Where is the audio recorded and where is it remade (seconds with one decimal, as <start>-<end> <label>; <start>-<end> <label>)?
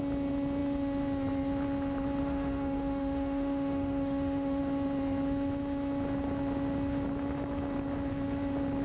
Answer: 0.0-2.2 recorded; 2.2-4.6 remade; 4.6-8.8 recorded